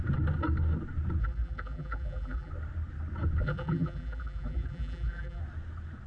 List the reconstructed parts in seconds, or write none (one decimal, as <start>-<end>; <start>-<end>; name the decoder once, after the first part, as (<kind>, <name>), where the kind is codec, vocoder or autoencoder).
1.2-2.5 (vocoder, BigVGAN v2); 3.4-5.4